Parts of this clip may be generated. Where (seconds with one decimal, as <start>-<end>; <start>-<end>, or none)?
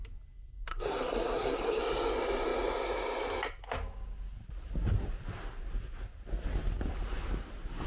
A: 0.7-1.8